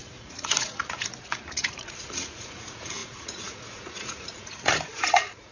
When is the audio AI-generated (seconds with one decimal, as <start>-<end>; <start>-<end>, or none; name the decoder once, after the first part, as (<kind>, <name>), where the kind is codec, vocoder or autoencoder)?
0.0-5.5 (vocoder, Vocos)